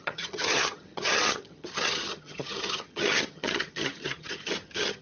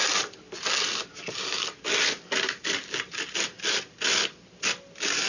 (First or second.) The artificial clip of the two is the first